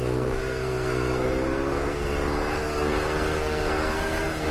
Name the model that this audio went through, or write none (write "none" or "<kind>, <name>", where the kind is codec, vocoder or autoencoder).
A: codec, SNAC